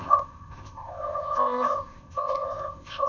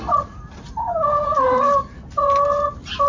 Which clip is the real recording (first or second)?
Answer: second